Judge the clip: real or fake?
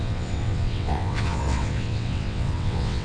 fake